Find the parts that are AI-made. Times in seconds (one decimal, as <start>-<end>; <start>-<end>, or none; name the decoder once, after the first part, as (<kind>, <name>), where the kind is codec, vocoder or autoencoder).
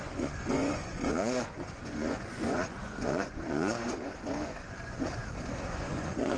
0.0-6.4 (vocoder, Vocos)